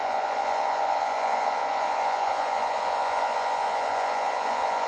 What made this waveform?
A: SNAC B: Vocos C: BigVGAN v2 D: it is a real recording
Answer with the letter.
B